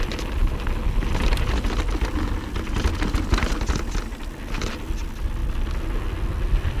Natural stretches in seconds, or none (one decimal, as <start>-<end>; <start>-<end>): 0.0-6.8